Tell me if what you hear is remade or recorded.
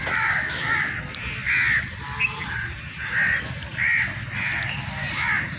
recorded